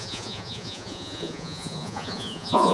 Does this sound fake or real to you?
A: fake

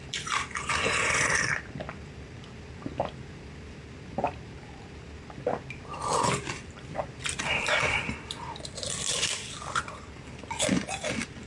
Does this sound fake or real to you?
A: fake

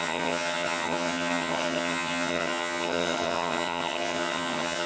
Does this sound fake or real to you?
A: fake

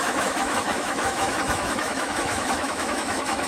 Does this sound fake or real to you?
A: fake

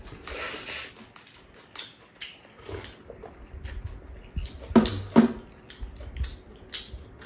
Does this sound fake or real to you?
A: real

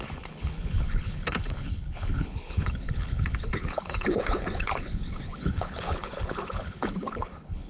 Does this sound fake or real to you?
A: fake